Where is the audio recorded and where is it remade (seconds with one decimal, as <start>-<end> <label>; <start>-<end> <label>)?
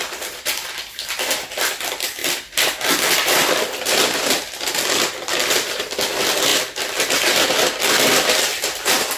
0.0-6.5 remade; 6.5-7.1 recorded; 7.1-9.2 remade